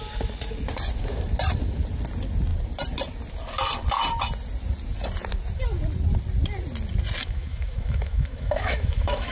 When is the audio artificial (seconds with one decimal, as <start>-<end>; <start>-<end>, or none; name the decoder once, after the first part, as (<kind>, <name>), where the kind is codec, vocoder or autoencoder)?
7.2-9.3 (autoencoder, DAC-VAE)